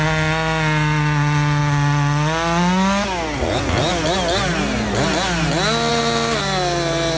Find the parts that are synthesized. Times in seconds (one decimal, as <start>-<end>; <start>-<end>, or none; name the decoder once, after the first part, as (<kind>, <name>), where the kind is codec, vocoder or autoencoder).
none